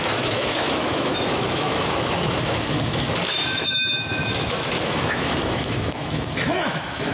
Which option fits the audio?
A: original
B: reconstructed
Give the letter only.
B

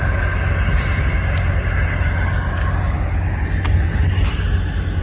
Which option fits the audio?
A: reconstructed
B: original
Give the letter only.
B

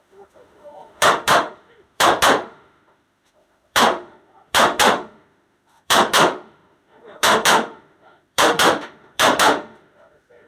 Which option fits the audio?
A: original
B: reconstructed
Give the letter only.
B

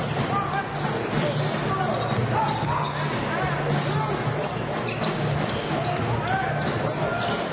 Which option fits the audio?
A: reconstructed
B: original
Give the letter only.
B